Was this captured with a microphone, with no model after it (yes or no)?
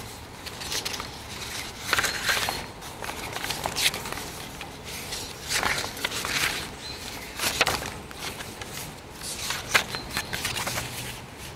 no